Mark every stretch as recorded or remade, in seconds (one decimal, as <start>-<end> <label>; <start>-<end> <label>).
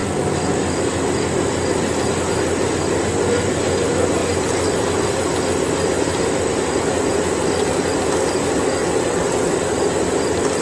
0.0-8.8 recorded; 8.8-9.5 remade; 9.5-10.6 recorded